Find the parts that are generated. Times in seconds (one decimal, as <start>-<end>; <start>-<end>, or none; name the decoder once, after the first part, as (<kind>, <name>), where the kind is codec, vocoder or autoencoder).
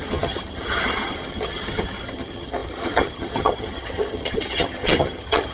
0.0-5.5 (vocoder, HiFi-GAN)